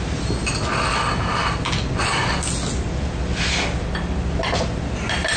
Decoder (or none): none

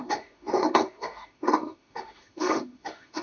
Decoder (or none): autoencoder, DAC-VAE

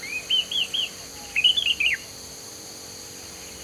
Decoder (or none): vocoder, BigVGAN v2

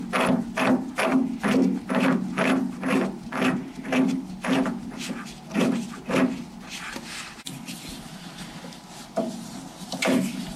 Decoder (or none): none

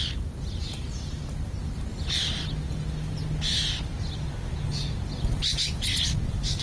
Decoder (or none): none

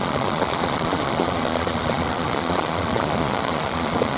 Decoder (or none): vocoder, Vocos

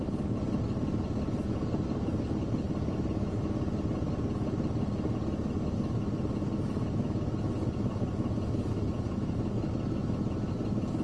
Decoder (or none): none